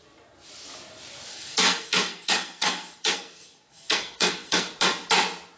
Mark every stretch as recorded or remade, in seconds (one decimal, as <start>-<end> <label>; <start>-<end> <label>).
0.0-1.3 recorded; 1.3-4.7 remade; 4.7-5.6 recorded